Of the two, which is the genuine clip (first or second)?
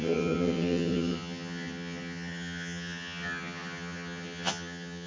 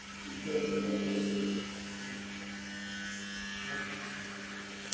second